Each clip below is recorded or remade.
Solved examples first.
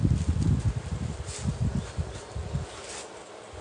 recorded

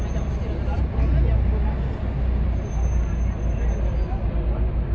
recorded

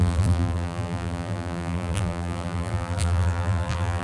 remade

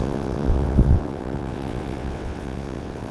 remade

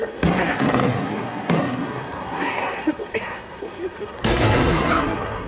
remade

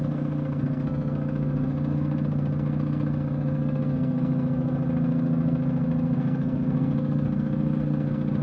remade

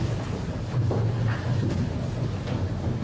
recorded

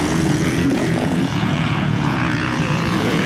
remade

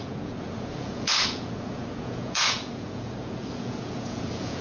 remade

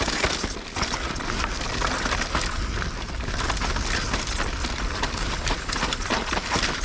recorded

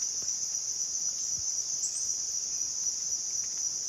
recorded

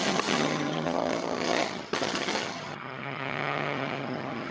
remade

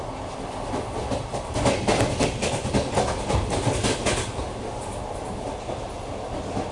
recorded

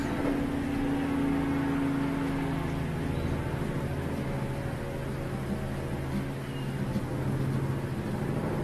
recorded